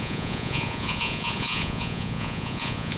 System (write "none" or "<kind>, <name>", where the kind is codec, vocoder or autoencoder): vocoder, Vocos